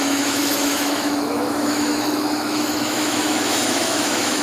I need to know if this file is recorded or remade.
remade